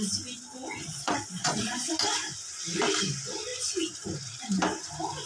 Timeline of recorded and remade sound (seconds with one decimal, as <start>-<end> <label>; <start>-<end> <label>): 0.0-0.8 recorded; 0.8-1.9 remade; 1.9-5.3 recorded